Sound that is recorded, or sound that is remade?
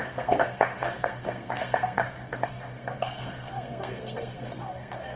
remade